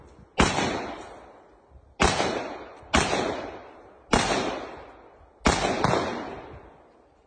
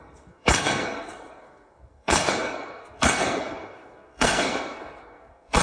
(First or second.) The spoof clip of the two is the second